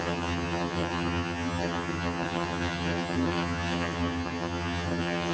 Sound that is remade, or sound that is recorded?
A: remade